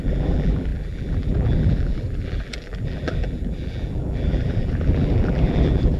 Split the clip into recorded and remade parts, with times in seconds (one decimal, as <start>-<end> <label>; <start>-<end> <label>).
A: 0.0-6.0 remade